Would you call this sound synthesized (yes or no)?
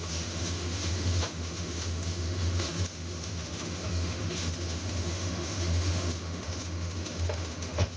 yes